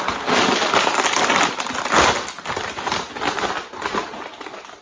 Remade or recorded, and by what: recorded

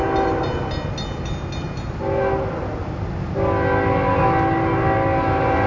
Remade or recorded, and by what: recorded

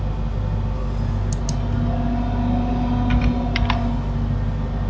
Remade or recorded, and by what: recorded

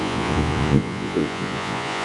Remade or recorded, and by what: remade, vocoder, Vocos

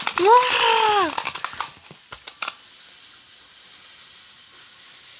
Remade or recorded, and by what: recorded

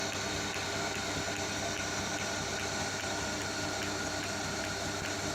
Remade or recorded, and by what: recorded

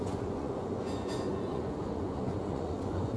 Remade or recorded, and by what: remade, vocoder, Vocos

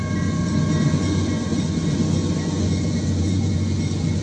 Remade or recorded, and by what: remade, vocoder, Vocos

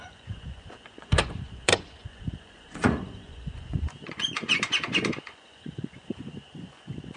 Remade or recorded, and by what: remade, vocoder, Vocos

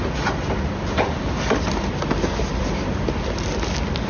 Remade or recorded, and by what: recorded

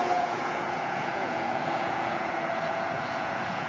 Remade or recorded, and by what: remade, vocoder, Vocos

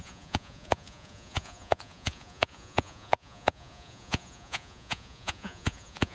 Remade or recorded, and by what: remade, vocoder, Vocos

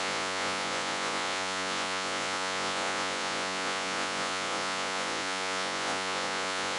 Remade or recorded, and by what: remade, vocoder, Vocos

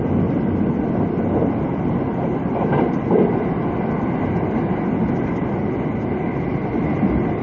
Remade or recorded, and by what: recorded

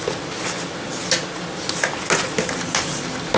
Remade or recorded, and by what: recorded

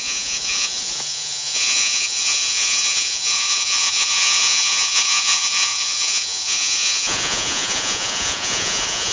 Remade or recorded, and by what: remade, vocoder, Vocos